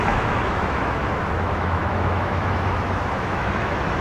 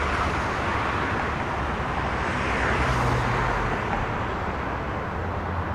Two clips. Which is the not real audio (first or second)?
first